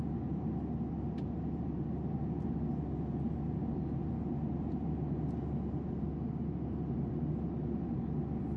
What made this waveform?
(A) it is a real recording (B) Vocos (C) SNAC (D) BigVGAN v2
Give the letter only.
A